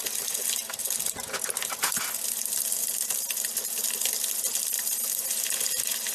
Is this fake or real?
real